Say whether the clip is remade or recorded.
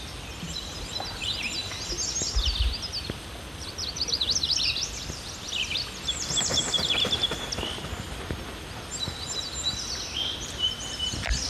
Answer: recorded